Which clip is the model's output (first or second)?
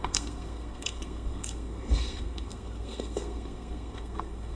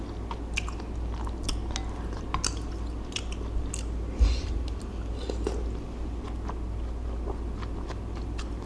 first